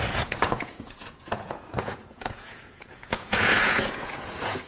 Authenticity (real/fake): fake